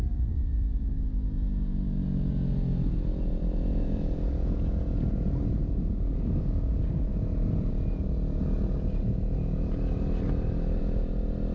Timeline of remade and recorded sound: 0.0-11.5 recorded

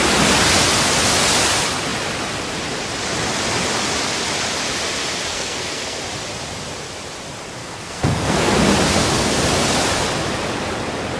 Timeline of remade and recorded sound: 0.0-5.3 recorded; 5.3-6.0 remade; 6.0-7.6 recorded; 7.6-8.5 remade; 8.5-11.2 recorded

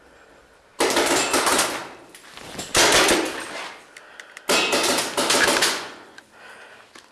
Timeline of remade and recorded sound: 0.0-5.6 recorded; 5.6-6.3 remade; 6.3-7.1 recorded

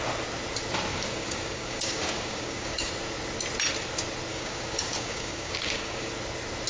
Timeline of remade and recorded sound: 0.0-0.9 recorded; 0.9-2.9 remade; 2.9-4.3 recorded; 4.3-6.1 remade; 6.1-6.7 recorded

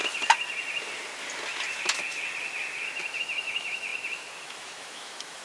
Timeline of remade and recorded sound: 0.0-3.2 recorded; 3.2-5.4 remade

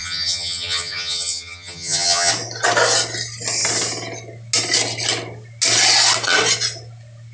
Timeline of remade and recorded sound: 0.0-2.3 remade; 2.3-7.3 recorded

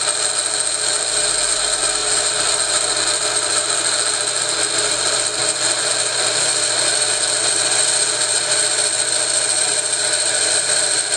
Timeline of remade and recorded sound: 0.0-11.2 recorded

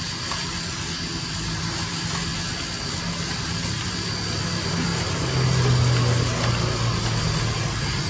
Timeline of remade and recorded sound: 0.0-8.1 recorded